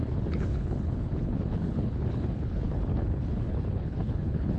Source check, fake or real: fake